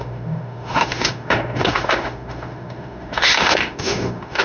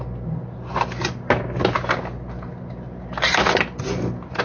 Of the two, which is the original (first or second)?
second